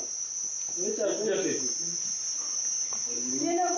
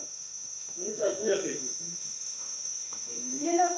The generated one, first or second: second